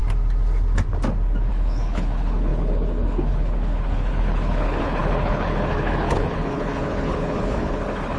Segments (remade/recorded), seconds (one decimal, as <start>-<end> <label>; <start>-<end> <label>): 0.0-1.5 recorded; 1.5-8.2 remade